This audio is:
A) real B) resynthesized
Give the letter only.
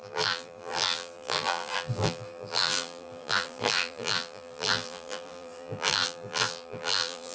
B